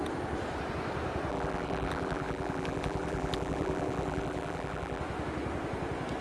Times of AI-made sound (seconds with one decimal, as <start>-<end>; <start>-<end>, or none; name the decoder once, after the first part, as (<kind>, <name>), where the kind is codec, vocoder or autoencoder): 1.3-5.0 (vocoder, BigVGAN v2)